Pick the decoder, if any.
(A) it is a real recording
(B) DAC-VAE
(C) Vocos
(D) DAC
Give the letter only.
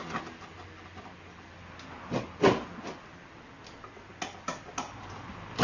A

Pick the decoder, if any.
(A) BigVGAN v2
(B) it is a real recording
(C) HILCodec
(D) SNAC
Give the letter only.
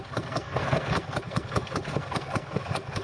D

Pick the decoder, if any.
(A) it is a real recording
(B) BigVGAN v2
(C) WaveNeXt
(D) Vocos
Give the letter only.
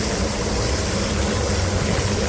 A